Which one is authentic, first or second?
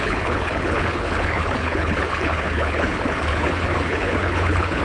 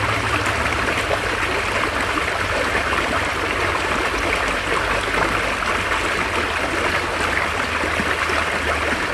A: second